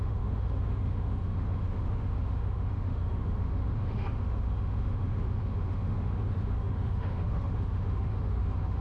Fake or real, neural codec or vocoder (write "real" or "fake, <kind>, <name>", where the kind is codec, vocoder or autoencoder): fake, autoencoder, DAC-VAE